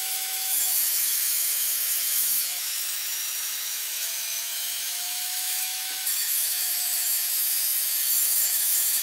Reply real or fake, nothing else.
fake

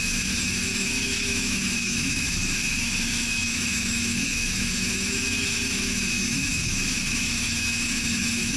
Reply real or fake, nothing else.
fake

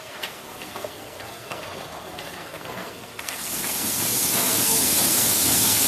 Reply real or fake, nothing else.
fake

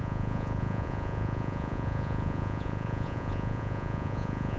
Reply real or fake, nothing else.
fake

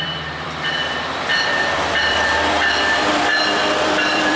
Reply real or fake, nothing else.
fake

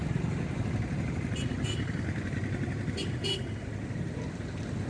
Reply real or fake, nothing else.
real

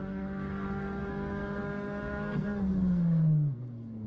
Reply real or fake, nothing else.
fake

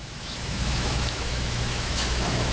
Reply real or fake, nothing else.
fake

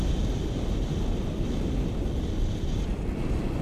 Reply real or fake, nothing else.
real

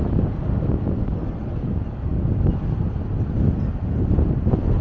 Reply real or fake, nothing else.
real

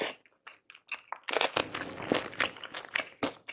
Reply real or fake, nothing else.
real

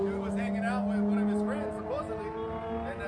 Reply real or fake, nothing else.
real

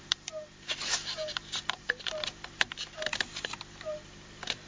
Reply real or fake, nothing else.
fake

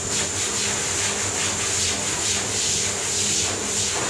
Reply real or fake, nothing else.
real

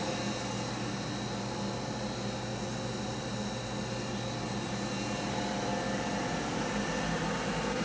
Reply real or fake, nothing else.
real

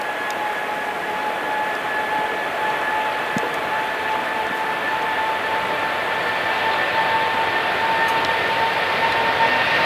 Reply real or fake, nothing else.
real